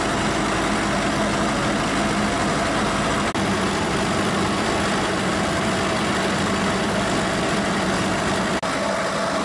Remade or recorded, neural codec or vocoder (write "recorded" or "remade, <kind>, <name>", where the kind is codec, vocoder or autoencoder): recorded